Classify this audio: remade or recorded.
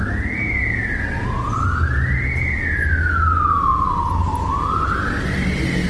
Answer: recorded